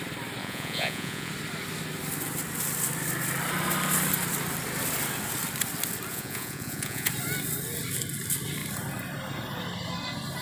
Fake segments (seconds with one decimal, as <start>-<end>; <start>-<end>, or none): 0.4-1.3; 6.1-7.1